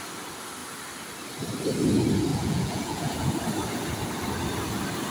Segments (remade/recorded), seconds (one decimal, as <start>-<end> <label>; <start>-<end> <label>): 0.0-2.3 recorded; 2.3-3.3 remade; 3.3-5.1 recorded

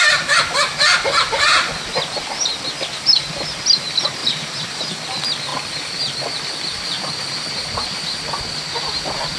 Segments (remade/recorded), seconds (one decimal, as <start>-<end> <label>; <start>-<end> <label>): 0.0-4.2 recorded; 4.2-4.8 remade; 4.8-9.4 recorded

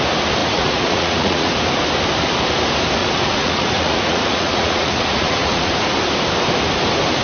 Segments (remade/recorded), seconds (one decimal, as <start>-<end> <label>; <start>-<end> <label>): 0.0-0.4 recorded; 0.4-1.5 remade; 1.5-3.0 recorded; 3.0-5.7 remade; 5.7-7.2 recorded